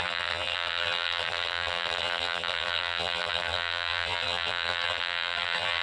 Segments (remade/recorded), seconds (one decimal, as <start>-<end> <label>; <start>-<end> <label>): 0.0-5.8 remade